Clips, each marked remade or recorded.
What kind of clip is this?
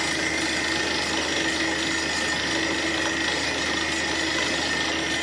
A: recorded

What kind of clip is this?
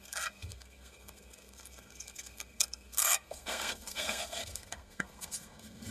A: remade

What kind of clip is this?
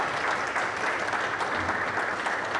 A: recorded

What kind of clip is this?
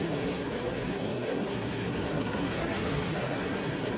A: remade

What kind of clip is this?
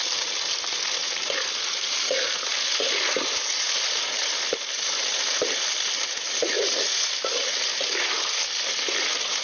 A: recorded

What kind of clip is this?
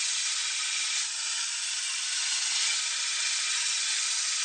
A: recorded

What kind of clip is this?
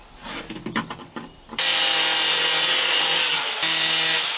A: recorded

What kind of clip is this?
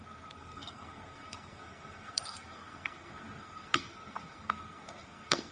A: remade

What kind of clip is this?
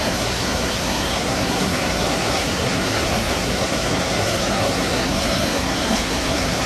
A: remade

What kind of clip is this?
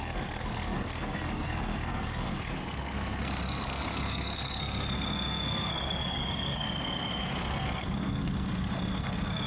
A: remade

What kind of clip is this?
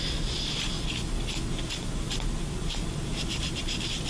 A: recorded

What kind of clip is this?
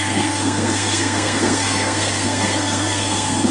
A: remade